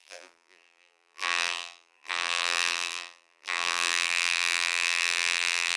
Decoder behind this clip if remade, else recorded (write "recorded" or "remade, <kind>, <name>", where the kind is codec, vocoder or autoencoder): remade, vocoder, BigVGAN v2